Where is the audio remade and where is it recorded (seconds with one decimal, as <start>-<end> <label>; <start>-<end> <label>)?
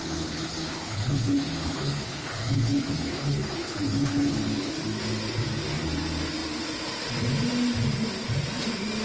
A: 0.0-4.7 remade; 4.7-9.0 recorded